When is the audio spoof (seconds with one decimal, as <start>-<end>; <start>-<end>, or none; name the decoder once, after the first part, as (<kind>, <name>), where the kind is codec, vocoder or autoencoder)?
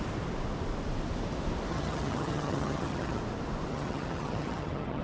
1.7-3.2 (vocoder, HiFi-GAN); 3.7-5.0